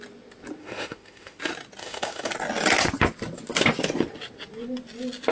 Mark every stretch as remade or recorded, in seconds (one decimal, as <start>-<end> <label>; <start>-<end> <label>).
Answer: 0.0-0.6 recorded; 0.6-1.4 remade; 1.4-1.8 recorded; 1.8-2.3 remade; 2.3-5.3 recorded